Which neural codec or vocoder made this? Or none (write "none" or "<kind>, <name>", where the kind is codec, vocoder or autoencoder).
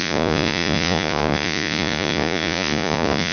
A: vocoder, Vocos